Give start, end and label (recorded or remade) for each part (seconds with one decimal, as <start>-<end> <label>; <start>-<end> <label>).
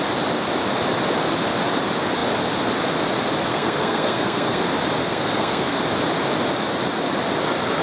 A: 0.0-3.5 recorded; 3.5-4.6 remade; 4.6-5.0 recorded; 5.0-5.8 remade; 5.8-7.8 recorded